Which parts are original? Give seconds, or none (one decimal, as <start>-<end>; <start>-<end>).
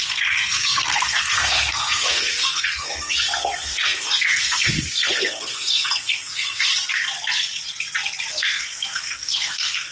6.7-8.3